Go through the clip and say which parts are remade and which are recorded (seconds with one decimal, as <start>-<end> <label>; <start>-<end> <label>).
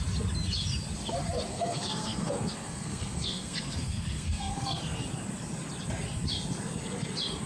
0.0-1.5 recorded; 1.5-4.8 remade; 4.8-7.5 recorded